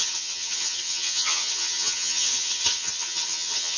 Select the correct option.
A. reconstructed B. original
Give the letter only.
A